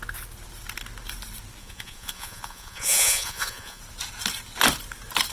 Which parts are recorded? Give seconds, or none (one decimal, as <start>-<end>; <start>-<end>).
0.0-1.6; 3.8-5.3